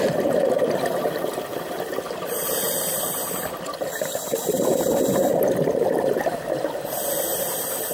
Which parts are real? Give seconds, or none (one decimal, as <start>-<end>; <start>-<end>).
0.0-1.5; 4.8-5.3